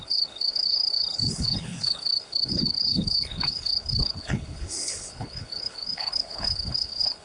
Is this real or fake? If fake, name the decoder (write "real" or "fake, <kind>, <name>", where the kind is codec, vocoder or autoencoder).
fake, codec, HILCodec